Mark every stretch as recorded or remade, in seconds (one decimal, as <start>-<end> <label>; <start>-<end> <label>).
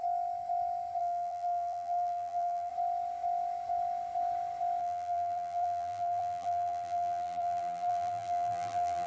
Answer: 0.0-1.0 recorded; 1.0-2.7 remade; 2.7-4.8 recorded; 4.8-9.1 remade